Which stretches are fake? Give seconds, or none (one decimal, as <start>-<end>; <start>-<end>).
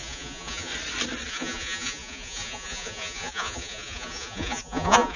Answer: 0.0-0.7; 1.3-5.2